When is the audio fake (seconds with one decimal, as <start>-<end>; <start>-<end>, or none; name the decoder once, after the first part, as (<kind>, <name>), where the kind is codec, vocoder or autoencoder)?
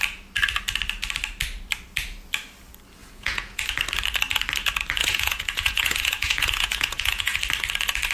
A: 3.0-3.6 (vocoder, Vocos); 5.0-7.4